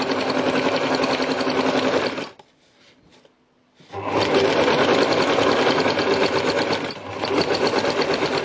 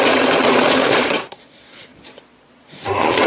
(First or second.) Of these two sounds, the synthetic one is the second